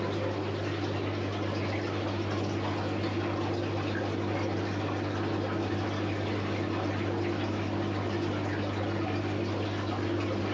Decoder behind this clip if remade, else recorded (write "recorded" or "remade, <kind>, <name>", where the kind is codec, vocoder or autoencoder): recorded